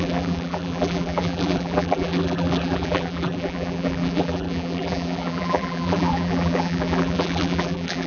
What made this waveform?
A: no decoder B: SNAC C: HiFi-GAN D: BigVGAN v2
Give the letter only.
D